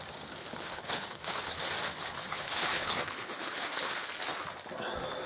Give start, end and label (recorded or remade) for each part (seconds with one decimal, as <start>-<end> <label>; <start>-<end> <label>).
0.0-0.4 recorded; 0.4-1.6 remade; 1.6-2.0 recorded; 2.0-4.1 remade; 4.1-5.3 recorded